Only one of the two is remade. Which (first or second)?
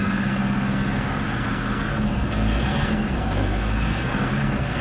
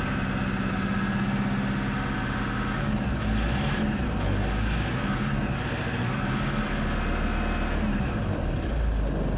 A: first